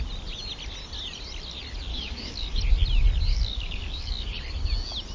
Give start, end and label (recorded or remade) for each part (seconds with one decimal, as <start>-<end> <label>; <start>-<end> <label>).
0.0-1.9 recorded; 1.9-2.6 remade; 2.6-3.3 recorded; 3.3-4.3 remade; 4.3-5.1 recorded